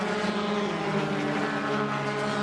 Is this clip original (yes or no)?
yes